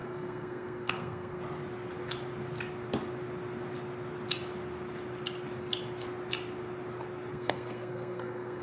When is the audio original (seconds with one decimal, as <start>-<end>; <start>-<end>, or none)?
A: 1.4-7.3